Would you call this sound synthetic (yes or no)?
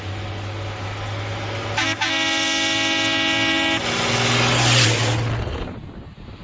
no